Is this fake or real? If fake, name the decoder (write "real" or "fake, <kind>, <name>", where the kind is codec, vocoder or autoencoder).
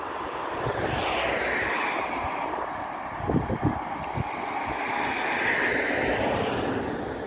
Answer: fake, vocoder, BigVGAN v2